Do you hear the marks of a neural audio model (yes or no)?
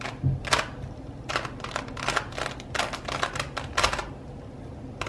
no